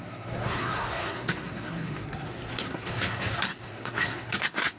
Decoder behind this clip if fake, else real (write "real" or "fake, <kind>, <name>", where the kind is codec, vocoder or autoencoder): fake, codec, SNAC